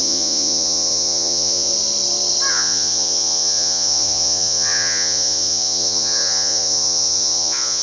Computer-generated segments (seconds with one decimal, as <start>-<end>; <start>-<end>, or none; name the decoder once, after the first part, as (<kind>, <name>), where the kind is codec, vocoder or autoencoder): 0.0-1.7 (vocoder, Vocos); 2.5-7.8